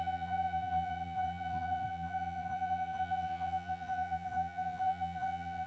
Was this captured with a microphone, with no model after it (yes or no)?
no